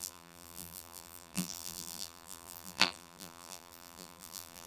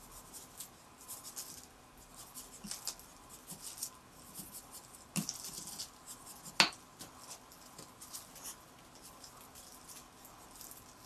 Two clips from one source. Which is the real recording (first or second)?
second